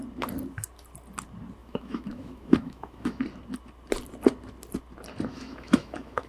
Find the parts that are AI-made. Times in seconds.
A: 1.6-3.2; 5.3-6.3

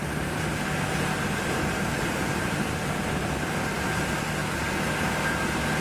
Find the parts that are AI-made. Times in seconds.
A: 0.0-3.5

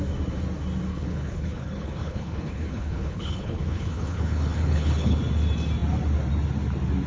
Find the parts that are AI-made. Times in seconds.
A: 0.9-5.2

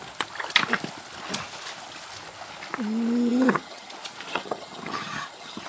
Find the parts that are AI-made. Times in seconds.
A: 3.3-3.9; 4.3-5.7